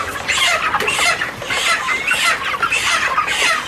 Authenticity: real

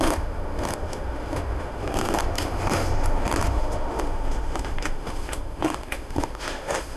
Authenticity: fake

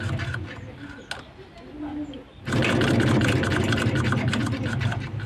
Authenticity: real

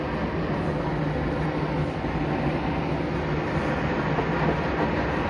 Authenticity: real